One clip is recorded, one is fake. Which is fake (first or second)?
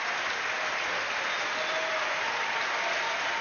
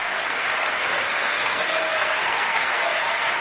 second